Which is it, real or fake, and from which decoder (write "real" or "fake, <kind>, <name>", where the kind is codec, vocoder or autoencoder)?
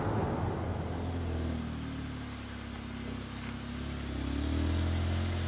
real